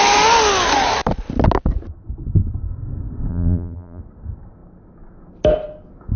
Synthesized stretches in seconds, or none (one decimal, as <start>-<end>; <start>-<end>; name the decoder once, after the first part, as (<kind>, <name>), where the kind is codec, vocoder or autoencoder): 3.3-4.0 (vocoder, BigVGAN v2)